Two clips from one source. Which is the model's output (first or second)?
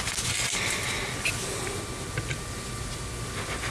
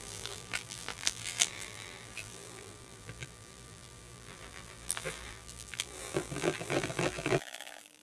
second